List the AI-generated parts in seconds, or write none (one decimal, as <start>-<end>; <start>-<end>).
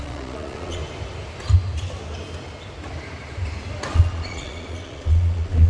0.0-0.8; 3.9-5.7